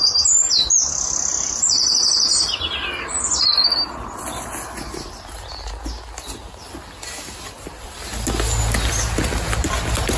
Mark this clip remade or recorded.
recorded